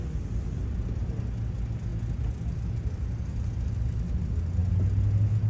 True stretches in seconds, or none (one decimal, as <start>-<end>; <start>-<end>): 0.0-5.5